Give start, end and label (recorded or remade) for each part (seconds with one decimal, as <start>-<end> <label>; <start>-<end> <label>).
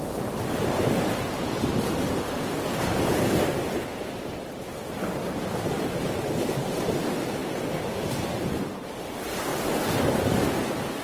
0.0-9.5 remade; 9.5-10.4 recorded; 10.4-11.0 remade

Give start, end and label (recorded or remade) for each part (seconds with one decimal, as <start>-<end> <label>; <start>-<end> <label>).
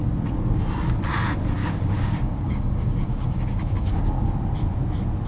0.0-1.6 recorded; 1.6-4.0 remade; 4.0-5.3 recorded